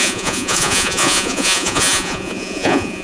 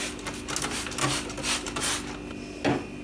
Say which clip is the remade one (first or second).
first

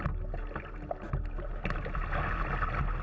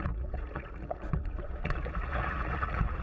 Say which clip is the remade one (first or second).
second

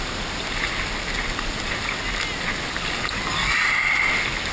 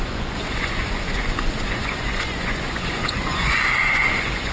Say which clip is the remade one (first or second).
second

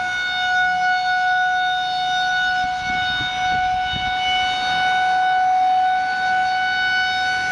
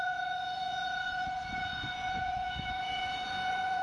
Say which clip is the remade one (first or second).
second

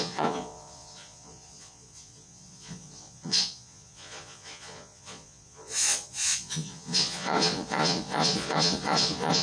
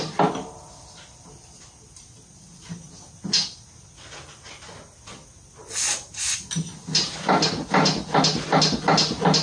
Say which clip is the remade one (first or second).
first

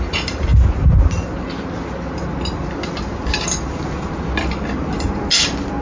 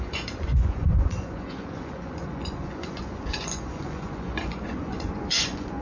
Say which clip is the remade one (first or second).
second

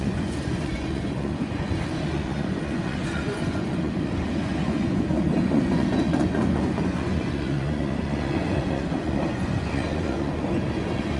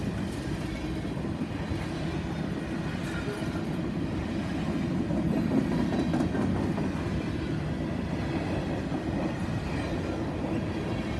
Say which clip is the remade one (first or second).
first